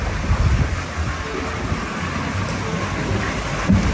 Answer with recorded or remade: recorded